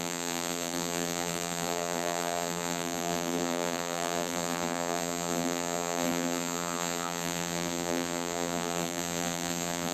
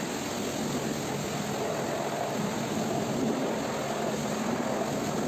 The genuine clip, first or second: second